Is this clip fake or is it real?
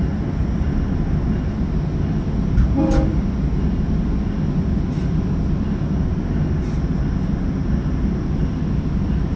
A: real